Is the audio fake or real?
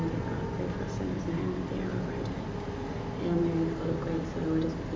real